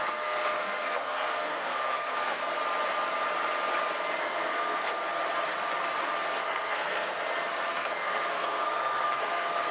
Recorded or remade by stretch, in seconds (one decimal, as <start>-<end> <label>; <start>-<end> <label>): 0.0-2.4 remade; 2.4-4.2 recorded; 4.2-5.0 remade; 5.0-6.4 recorded; 6.4-7.1 remade; 7.1-7.7 recorded; 7.7-9.7 remade